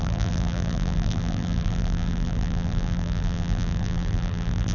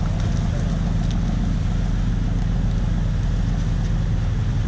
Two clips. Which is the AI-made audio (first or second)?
first